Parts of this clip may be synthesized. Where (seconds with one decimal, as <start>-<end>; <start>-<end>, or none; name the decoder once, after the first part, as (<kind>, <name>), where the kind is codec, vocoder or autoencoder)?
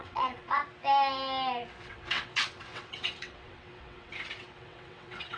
0.0-0.6 (vocoder, WaveNeXt); 1.8-5.4